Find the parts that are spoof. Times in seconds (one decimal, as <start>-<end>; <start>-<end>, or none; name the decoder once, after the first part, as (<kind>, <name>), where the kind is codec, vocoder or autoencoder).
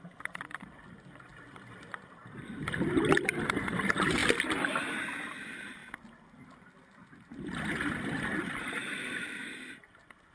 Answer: none